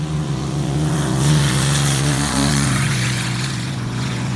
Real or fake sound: fake